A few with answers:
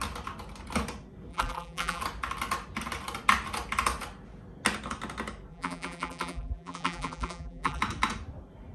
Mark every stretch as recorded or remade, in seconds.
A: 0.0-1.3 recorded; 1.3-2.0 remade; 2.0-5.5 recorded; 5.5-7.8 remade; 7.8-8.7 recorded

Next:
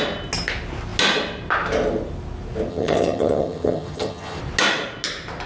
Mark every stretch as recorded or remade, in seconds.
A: 0.0-2.7 recorded; 2.7-4.4 remade; 4.4-5.5 recorded